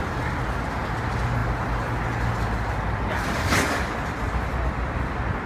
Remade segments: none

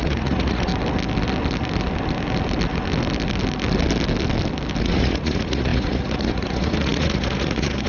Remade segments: 0.0-0.7 (vocoder, Vocos); 4.8-7.9

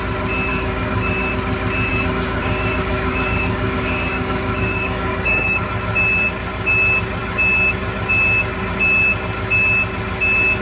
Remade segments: 0.5-1.3 (codec, DAC); 1.9-5.7

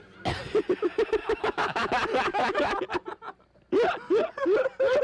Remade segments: 1.2-1.9 (autoencoder, DAC-VAE); 2.3-2.8

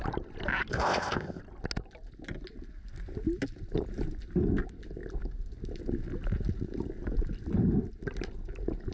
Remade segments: 0.7-1.4 (codec, ZipCodec)

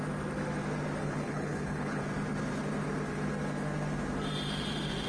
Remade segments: 1.0-2.0 (codec, HILCodec)

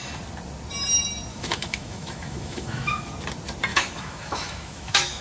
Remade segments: 1.3-3.1 (autoencoder, DAC-VAE); 3.7-5.2